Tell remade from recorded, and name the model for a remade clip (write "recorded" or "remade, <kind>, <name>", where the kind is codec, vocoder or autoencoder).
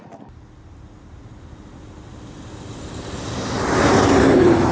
recorded